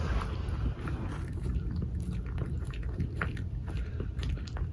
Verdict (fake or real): fake